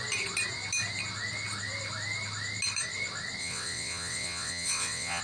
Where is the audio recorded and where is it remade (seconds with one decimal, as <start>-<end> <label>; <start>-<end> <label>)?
0.0-3.4 recorded; 3.4-5.2 remade